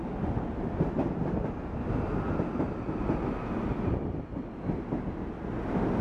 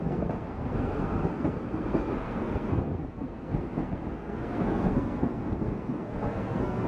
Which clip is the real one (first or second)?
first